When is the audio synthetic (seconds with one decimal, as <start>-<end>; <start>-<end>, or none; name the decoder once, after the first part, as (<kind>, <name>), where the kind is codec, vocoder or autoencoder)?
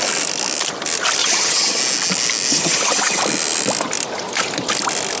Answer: 1.2-1.8 (vocoder, HiFi-GAN); 2.5-3.2